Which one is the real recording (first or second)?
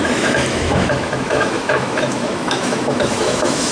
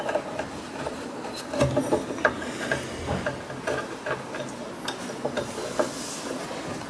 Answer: second